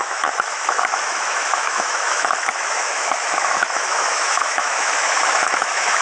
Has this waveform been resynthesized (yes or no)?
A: yes